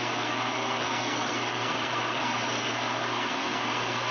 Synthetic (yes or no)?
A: yes